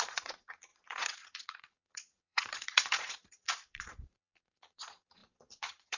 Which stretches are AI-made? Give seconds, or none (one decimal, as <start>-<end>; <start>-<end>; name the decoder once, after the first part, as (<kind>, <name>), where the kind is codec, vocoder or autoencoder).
0.0-6.0 (vocoder, Vocos)